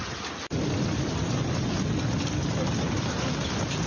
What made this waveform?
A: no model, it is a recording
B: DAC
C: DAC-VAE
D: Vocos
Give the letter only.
A